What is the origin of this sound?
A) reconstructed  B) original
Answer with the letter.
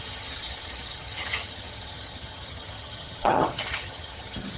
A